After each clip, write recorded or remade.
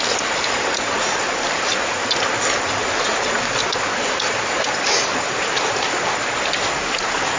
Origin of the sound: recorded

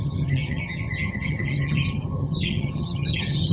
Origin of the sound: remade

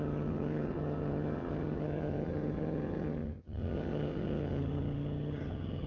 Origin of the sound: remade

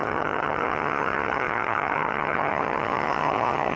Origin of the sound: remade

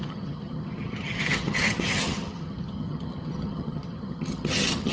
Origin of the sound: remade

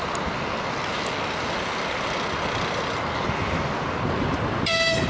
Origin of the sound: recorded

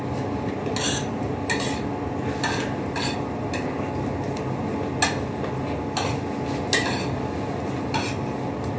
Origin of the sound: recorded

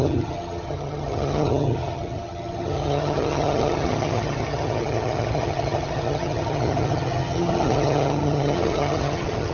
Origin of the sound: remade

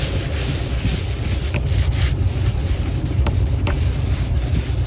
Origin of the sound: recorded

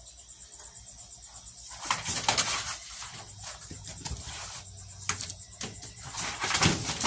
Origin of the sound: recorded